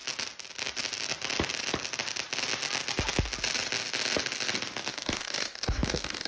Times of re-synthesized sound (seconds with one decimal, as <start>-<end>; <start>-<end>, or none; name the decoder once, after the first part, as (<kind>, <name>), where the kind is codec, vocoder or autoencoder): 4.9-6.3 (codec, DAC)